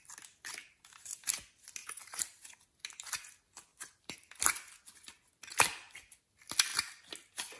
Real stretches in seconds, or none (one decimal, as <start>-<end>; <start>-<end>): 0.0-0.6; 1.3-3.7; 4.3-7.6